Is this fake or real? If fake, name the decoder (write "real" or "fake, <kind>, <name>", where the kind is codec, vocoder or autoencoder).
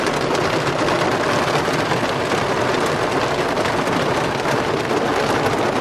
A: real